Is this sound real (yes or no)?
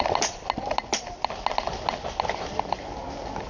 yes